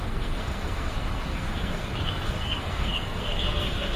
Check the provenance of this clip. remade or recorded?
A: remade